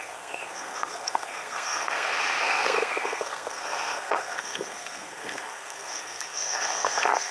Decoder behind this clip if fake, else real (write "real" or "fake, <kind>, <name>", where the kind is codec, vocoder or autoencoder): fake, codec, SNAC